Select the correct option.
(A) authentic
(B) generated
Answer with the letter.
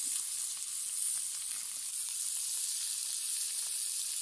A